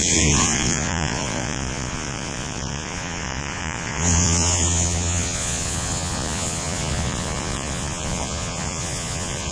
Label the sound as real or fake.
fake